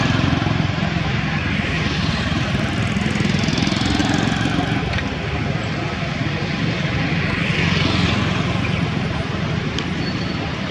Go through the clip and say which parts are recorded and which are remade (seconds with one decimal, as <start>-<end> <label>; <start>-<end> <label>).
0.0-4.0 remade; 4.0-9.0 recorded; 9.0-10.7 remade